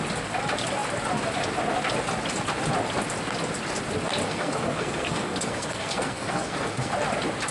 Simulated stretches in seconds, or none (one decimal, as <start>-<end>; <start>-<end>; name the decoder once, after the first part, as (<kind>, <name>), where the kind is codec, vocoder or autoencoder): 4.2-6.9 (codec, SNAC)

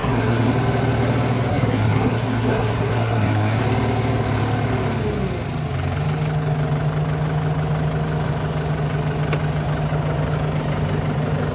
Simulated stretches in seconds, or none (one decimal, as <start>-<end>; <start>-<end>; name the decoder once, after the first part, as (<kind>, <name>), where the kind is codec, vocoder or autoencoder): 0.0-0.5 (codec, SNAC); 1.5-3.6

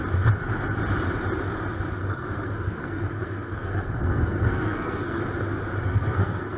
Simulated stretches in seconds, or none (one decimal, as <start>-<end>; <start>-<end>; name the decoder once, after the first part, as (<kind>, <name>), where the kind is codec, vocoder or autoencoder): 2.0-5.2 (codec, SNAC); 5.9-6.6

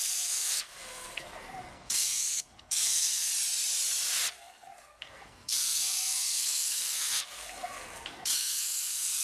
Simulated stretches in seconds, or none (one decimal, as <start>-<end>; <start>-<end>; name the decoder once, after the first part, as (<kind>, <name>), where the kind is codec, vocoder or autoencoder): 0.0-3.3 (codec, SNAC); 4.3-9.2

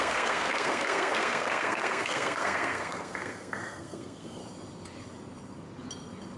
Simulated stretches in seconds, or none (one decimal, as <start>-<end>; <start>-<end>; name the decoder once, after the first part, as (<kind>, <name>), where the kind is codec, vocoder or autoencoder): 0.0-4.4 (codec, SNAC)

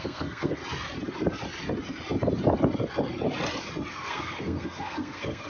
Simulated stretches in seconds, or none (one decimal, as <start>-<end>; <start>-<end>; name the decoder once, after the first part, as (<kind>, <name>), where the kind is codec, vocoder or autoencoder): 0.0-0.6 (codec, SNAC); 3.9-5.5

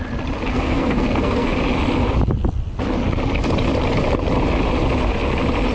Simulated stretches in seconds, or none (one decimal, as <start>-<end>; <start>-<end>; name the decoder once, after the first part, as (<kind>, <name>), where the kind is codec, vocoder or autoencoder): 0.5-1.5 (codec, SNAC)